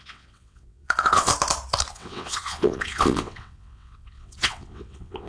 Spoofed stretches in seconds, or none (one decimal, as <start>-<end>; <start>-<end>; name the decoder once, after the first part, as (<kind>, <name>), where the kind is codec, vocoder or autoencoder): 0.0-1.3 (vocoder, WaveNeXt); 1.9-5.3